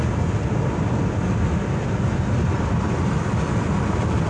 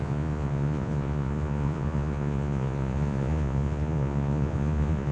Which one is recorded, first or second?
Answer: first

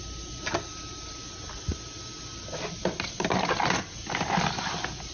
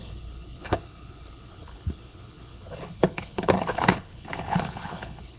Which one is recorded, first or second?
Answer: first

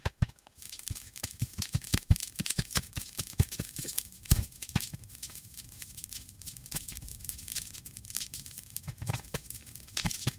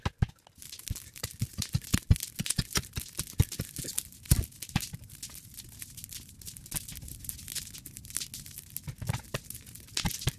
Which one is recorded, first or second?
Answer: second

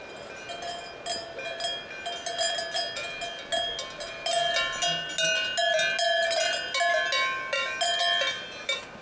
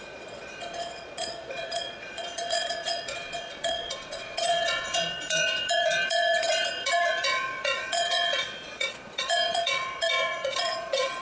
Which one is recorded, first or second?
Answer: first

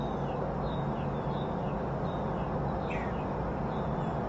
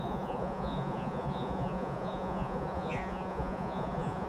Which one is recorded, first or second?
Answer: first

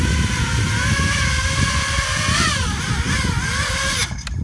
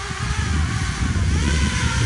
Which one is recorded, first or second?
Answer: first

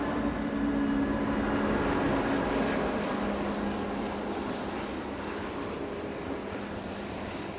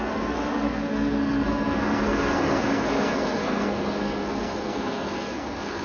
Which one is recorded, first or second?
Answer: first